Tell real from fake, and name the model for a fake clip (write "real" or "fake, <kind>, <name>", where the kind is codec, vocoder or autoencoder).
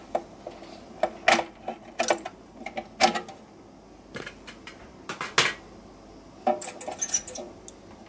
real